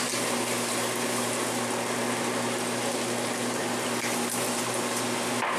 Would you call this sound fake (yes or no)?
no